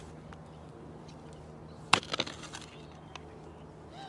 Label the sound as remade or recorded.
recorded